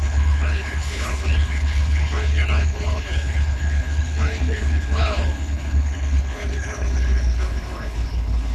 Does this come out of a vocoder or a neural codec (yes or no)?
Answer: yes